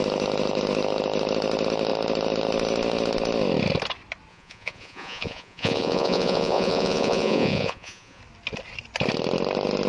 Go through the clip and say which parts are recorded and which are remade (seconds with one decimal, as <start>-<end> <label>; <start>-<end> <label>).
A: 0.0-4.3 recorded; 4.3-8.2 remade; 8.2-9.9 recorded